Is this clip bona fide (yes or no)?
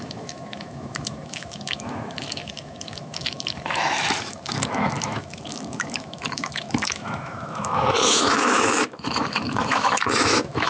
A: no